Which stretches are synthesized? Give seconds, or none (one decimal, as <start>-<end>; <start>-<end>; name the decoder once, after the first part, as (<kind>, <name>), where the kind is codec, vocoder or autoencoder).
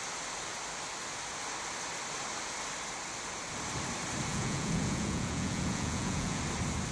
4.3-6.4 (vocoder, Vocos)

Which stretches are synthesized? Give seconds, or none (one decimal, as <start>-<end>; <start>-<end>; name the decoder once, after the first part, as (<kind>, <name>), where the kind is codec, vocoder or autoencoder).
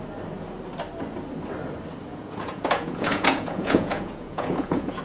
2.1-5.0 (vocoder, Vocos)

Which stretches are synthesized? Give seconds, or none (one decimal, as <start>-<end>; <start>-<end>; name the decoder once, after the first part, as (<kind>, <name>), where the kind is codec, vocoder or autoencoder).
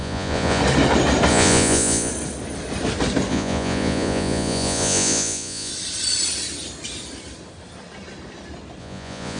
0.0-0.6 (vocoder, Vocos); 1.3-2.1; 3.3-5.7; 8.8-9.4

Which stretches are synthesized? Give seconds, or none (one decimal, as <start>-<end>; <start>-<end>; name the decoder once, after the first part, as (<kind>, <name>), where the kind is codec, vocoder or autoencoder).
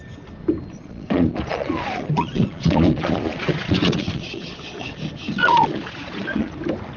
0.7-4.9 (vocoder, Vocos); 5.4-6.5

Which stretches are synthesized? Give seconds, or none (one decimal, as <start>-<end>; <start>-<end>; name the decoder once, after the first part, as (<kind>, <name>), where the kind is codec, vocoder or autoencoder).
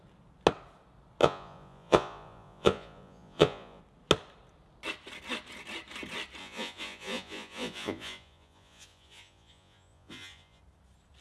1.2-3.8 (vocoder, Vocos); 6.4-10.6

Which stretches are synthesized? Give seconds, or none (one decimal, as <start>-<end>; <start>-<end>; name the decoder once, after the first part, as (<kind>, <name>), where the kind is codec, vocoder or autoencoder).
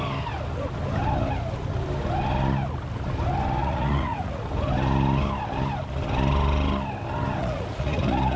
3.6-4.4 (vocoder, Vocos); 7.4-8.4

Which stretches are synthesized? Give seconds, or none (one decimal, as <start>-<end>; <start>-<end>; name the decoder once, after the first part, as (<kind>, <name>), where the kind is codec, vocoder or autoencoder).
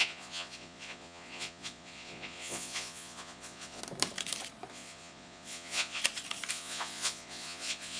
0.0-3.8 (vocoder, Vocos); 4.7-6.0; 6.5-8.0